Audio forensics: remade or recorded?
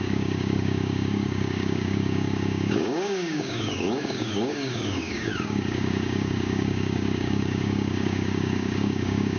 remade